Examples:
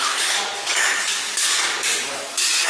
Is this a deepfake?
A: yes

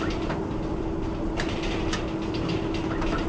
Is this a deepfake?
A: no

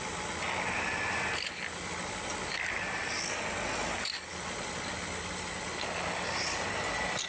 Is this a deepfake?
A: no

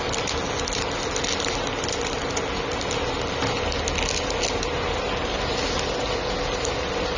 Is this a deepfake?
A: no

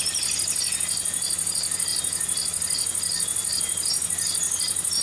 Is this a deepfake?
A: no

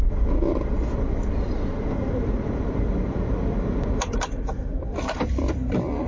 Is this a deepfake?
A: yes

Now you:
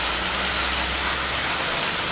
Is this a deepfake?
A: no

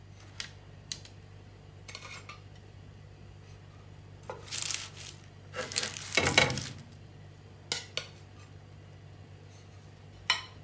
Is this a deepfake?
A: no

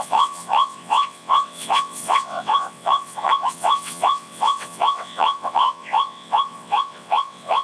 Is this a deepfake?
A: yes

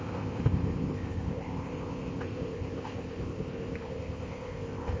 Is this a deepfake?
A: yes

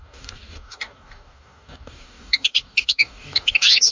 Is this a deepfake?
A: yes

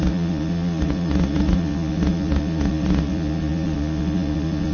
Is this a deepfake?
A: yes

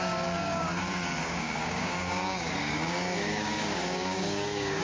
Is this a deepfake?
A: yes